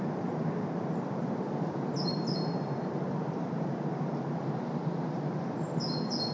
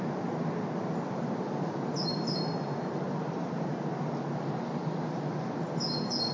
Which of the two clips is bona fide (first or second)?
second